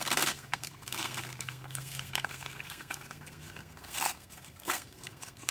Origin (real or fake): fake